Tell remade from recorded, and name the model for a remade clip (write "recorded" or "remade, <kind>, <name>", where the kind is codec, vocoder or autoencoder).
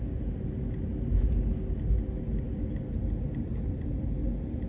recorded